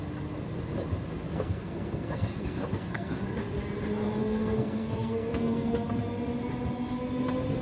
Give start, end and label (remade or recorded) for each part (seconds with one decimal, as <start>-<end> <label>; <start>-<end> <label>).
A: 0.0-1.3 recorded; 1.3-3.2 remade; 3.2-4.2 recorded; 4.2-6.0 remade; 6.0-7.6 recorded